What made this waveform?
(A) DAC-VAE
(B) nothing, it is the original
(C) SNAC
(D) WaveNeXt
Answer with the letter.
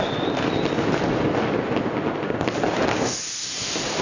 B